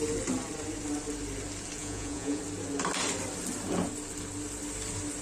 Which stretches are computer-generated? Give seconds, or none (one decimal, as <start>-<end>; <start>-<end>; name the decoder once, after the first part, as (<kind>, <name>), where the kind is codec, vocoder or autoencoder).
1.8-2.4 (vocoder, Vocos)